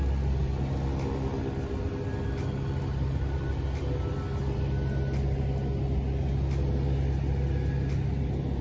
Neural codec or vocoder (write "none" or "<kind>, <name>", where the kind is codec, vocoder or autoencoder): none